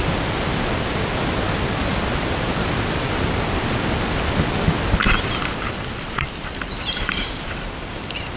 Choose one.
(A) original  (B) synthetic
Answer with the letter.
A